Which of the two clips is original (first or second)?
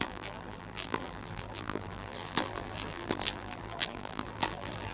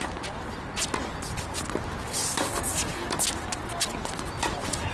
second